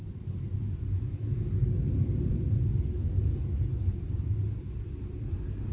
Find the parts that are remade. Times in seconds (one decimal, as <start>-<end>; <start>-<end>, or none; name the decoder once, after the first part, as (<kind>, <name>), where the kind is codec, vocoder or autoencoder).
none